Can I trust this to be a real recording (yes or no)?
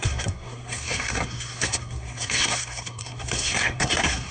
no